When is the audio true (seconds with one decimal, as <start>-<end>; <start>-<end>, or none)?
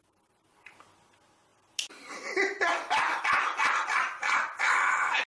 0.0-1.5; 4.7-5.4